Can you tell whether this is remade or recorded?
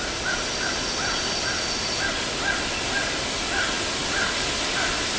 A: recorded